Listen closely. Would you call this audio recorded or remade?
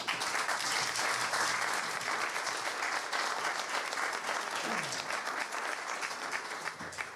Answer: recorded